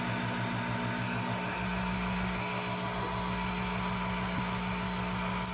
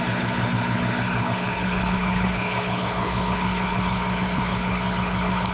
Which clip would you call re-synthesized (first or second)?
second